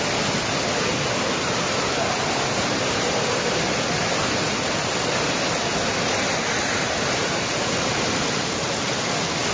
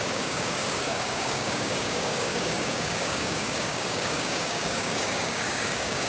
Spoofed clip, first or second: second